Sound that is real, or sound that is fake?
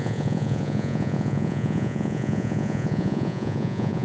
fake